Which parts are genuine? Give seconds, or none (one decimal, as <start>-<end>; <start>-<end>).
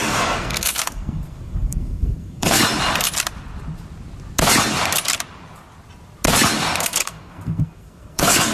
2.6-6.8